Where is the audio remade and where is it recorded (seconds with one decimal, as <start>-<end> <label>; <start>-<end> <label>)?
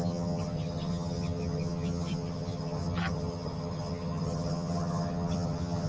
0.0-5.9 remade